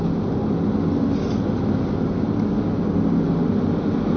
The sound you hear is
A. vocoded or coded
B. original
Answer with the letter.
B